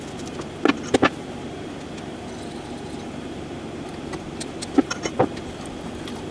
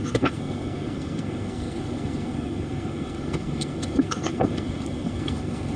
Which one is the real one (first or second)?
first